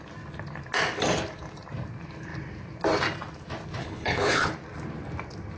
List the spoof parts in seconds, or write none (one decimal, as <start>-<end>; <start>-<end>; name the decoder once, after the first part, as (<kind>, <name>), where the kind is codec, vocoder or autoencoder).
3.8-4.5 (codec, HILCodec)